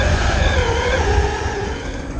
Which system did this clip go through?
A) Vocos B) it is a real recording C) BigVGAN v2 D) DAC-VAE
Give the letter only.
A